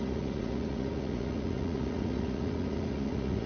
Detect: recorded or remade remade